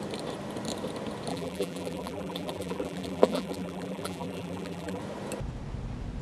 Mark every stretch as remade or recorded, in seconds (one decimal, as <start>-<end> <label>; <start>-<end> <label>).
0.0-1.3 recorded; 1.3-5.0 remade; 5.0-6.2 recorded